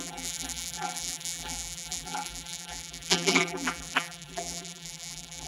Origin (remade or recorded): remade